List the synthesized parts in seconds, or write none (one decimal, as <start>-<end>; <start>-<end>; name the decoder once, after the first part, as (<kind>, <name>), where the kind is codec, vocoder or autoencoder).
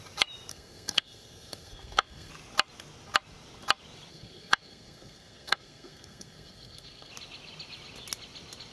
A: 0.5-2.3 (codec, SNAC); 4.1-7.1